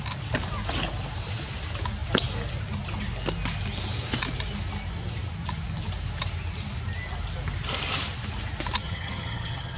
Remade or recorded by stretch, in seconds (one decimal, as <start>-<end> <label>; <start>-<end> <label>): 0.0-8.8 recorded; 8.8-9.8 remade